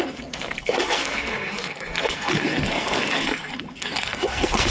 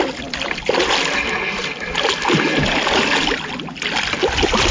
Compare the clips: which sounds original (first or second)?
second